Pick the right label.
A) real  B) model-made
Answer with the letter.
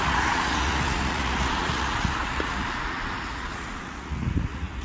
B